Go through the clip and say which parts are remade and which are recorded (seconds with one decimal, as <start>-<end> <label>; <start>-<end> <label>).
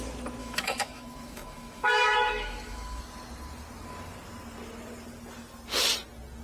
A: 0.0-0.4 recorded; 0.4-3.0 remade; 3.0-6.4 recorded